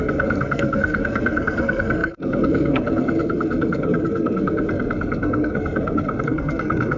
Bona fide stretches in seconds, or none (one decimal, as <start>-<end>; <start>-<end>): none